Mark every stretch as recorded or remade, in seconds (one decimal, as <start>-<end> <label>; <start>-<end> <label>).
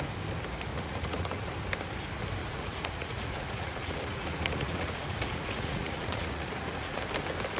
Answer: 0.0-0.7 recorded; 0.7-1.5 remade; 1.5-2.4 recorded; 2.4-7.0 remade; 7.0-7.6 recorded